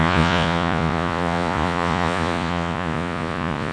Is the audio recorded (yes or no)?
no